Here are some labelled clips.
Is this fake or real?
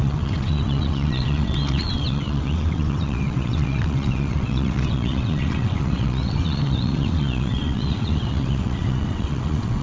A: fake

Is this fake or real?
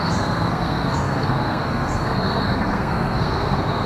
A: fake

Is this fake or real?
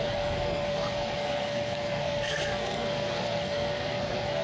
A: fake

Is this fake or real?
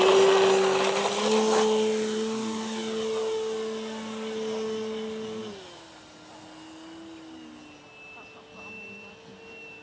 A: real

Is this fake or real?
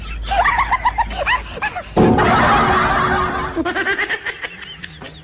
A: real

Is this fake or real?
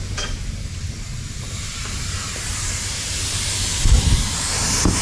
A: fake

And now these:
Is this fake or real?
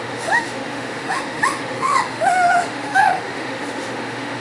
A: fake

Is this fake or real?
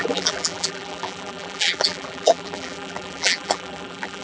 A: fake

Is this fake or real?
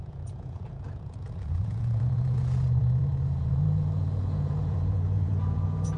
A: fake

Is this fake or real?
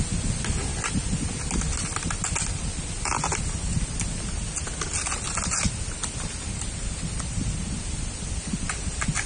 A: real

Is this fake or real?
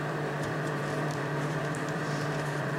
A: fake